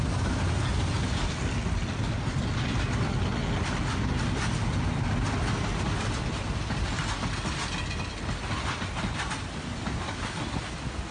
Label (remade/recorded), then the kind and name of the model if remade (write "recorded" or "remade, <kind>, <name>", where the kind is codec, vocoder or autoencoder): recorded